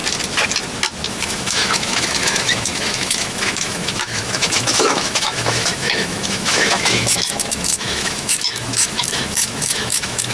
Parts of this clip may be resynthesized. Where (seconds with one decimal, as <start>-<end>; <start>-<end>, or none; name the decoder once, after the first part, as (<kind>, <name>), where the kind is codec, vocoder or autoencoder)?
1.1-10.3 (autoencoder, DAC-VAE)

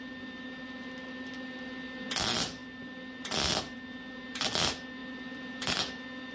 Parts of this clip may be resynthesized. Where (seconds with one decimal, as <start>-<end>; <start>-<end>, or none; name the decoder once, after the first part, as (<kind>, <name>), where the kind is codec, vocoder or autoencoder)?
none

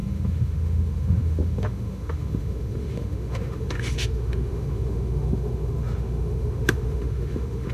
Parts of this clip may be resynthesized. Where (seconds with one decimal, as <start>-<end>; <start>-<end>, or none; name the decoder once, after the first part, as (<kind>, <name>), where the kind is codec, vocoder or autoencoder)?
0.0-7.7 (autoencoder, DAC-VAE)

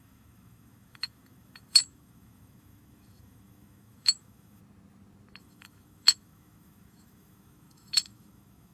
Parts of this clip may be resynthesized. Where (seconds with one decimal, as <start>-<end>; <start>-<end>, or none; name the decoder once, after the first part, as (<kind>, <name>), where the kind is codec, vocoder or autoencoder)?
0.0-4.6 (autoencoder, DAC-VAE); 5.4-8.7

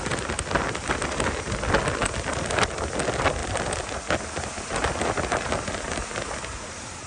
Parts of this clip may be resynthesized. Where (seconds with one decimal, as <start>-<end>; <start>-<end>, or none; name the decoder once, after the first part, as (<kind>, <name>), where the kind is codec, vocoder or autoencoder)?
none

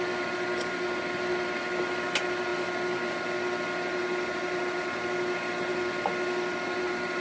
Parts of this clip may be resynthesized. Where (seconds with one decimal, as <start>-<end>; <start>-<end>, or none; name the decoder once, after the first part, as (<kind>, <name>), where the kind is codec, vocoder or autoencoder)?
none

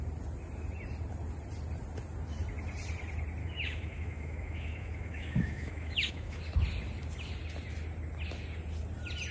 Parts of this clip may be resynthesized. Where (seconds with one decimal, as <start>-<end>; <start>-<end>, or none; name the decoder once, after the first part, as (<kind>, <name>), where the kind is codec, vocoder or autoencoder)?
3.4-6.4 (autoencoder, DAC-VAE)